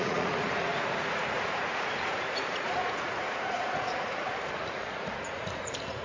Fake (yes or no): yes